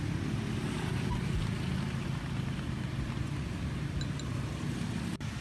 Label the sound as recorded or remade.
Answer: recorded